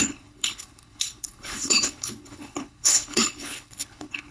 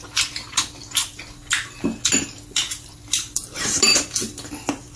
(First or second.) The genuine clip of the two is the second